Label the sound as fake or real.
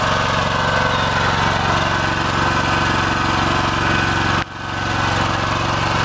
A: real